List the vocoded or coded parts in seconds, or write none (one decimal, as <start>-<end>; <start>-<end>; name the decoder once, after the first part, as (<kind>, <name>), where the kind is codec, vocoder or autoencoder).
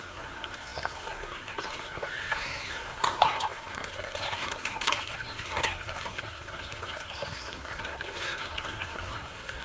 0.0-9.6 (codec, SNAC)